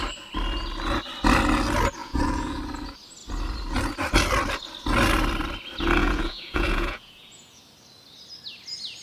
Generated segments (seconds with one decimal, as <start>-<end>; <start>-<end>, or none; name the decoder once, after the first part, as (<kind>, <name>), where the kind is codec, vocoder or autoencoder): 2.0-2.6 (vocoder, Vocos); 6.0-7.6